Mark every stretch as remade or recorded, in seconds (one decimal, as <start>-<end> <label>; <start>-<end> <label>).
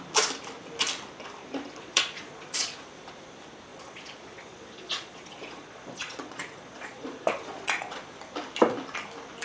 0.0-1.4 recorded; 1.4-2.8 remade; 2.8-3.7 recorded; 3.7-8.1 remade; 8.1-9.4 recorded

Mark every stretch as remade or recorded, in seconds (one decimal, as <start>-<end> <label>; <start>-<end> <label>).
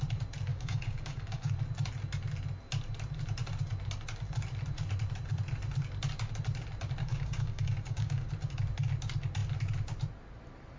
0.0-0.5 recorded; 0.5-1.5 remade; 1.5-7.0 recorded; 7.0-8.3 remade; 8.3-10.8 recorded